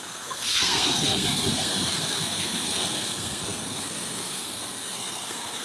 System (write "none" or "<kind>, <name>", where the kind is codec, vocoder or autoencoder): codec, SNAC